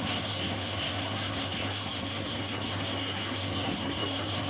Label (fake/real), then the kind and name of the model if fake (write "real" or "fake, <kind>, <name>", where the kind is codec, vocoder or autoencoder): fake, codec, SNAC